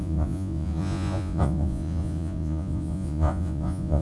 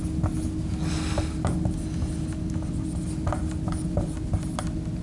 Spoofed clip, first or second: first